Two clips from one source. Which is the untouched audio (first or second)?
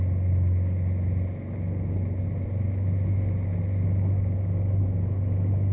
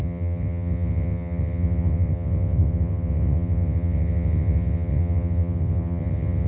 first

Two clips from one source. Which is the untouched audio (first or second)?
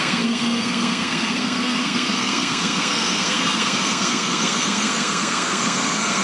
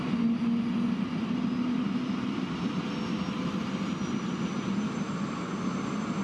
second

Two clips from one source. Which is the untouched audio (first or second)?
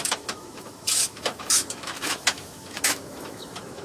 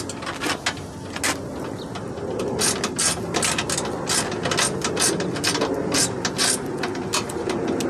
second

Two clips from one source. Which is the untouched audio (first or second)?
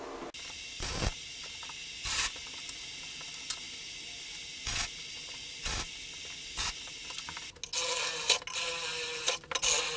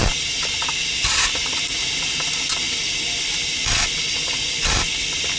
first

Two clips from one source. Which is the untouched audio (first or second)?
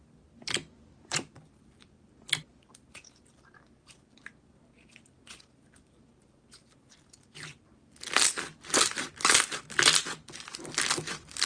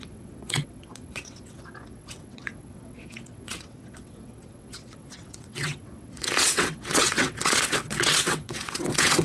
first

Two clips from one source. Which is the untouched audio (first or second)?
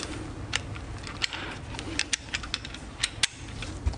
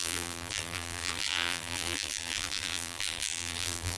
first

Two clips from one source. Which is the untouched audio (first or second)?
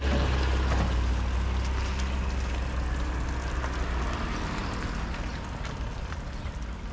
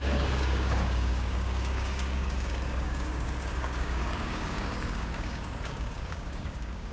first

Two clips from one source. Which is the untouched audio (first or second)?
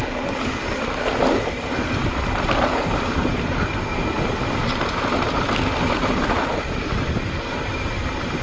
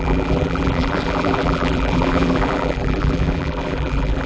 first